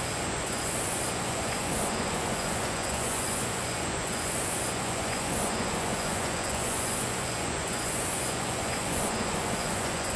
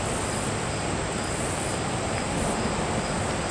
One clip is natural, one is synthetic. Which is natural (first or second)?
second